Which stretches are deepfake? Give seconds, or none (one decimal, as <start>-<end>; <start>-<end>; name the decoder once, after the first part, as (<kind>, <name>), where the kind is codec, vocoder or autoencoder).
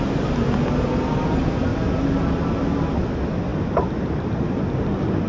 none